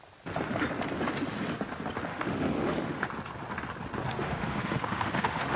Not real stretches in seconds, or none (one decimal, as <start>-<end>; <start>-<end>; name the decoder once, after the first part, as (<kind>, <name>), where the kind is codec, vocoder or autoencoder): 2.1-3.1 (autoencoder, DAC-VAE); 4.2-5.6